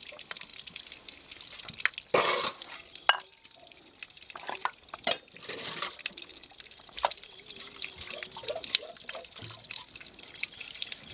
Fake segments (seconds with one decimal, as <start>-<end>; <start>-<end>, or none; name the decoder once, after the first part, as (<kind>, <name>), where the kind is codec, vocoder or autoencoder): none